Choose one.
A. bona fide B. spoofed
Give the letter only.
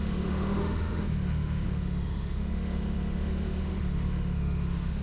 B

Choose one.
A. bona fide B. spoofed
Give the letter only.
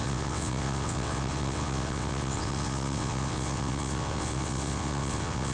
B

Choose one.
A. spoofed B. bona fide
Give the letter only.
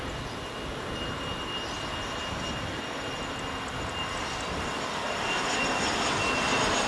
B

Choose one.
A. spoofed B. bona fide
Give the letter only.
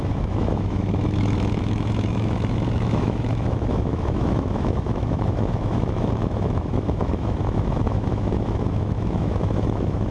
A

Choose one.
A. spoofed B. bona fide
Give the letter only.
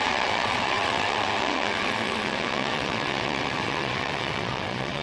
A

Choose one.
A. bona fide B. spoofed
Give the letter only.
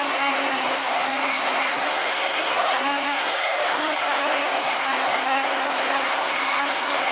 B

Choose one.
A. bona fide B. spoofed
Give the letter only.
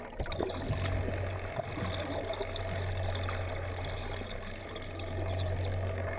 A